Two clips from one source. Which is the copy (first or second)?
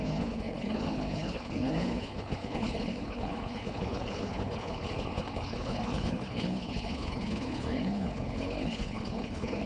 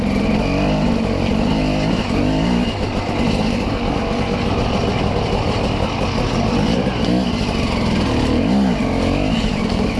first